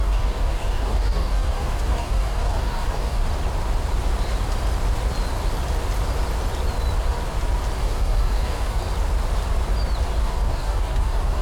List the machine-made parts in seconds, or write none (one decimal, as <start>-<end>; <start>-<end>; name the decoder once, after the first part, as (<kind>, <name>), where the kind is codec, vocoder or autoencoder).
0.0-3.2 (codec, DAC); 7.8-8.8; 10.2-11.4

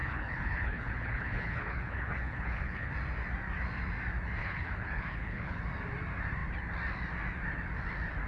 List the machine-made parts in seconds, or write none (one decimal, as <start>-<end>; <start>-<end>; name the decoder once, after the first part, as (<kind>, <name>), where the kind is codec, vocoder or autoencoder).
0.0-2.9 (codec, HILCodec); 4.4-5.6

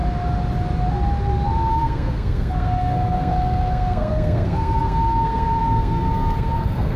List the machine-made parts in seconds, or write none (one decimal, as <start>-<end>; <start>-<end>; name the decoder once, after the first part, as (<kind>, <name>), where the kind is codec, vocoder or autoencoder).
1.7-7.0 (codec, SNAC)

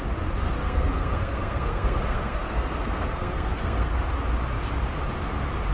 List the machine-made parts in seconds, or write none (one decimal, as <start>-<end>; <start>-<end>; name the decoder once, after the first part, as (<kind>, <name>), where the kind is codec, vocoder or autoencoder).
0.6-4.0 (codec, SNAC)

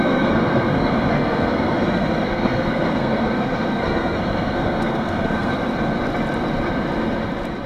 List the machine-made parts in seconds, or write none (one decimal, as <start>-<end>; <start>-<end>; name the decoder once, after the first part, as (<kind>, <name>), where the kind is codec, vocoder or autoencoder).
0.0-5.5 (codec, SNAC)

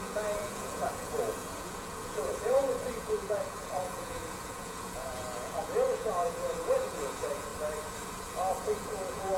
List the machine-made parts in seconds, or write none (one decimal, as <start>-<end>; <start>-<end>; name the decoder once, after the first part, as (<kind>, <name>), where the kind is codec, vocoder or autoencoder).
0.0-7.5 (vocoder, Vocos); 8.2-9.4

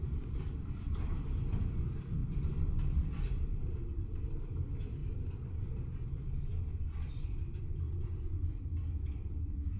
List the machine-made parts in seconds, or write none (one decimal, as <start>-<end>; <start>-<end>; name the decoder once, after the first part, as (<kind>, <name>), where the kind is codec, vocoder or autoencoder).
0.0-9.8 (vocoder, BigVGAN v2)